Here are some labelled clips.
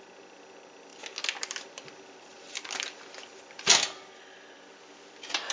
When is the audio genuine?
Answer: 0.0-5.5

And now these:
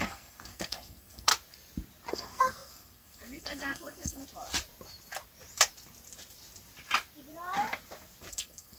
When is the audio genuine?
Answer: 1.3-2.1; 4.2-8.3

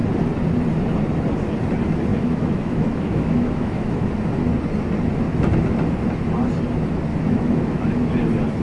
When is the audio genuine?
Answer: 0.0-2.1; 4.1-7.1; 8.1-8.6

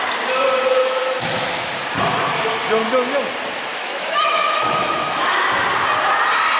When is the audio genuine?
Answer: 0.0-0.8; 1.7-3.7; 5.5-6.6